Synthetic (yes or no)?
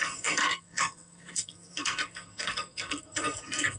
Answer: yes